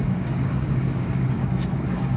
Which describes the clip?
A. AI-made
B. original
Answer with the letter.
A